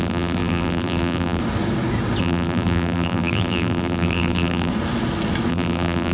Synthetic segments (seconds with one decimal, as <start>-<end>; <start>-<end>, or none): 0.0-1.4; 2.2-4.7; 5.5-6.1